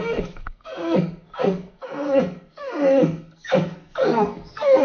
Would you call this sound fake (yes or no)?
yes